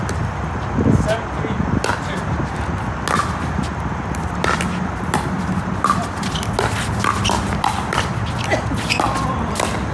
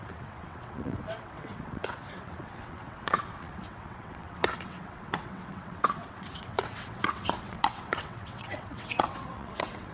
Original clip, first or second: first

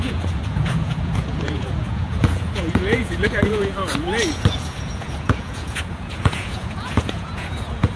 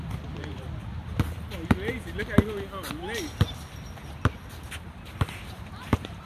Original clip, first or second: second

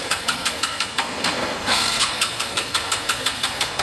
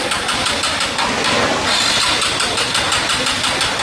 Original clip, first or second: second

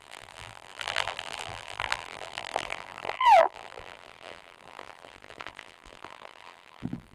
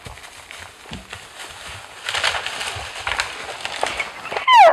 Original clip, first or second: second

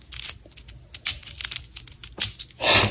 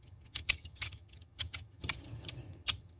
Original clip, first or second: first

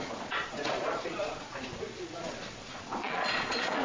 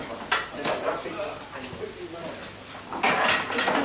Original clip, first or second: second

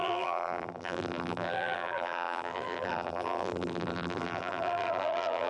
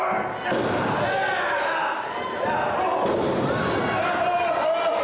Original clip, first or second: second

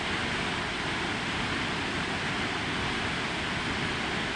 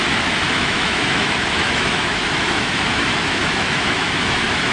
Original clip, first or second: first